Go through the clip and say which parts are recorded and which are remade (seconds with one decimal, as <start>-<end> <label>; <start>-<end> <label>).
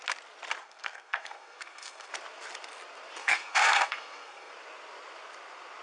0.0-0.6 recorded; 0.6-2.1 remade; 2.1-3.2 recorded; 3.2-4.5 remade; 4.5-5.8 recorded